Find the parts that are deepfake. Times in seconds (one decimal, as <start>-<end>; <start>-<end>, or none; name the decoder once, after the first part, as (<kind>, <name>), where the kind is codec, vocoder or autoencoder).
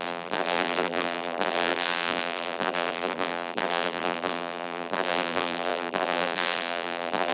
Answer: 0.0-7.3 (vocoder, BigVGAN v2)